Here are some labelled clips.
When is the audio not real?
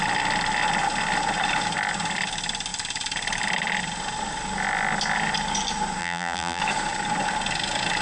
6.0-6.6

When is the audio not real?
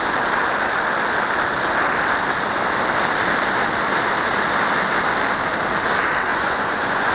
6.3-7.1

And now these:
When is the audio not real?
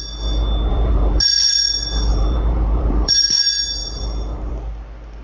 0.7-1.2; 2.1-3.2; 3.8-4.5